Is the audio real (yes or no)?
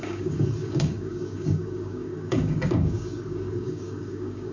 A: no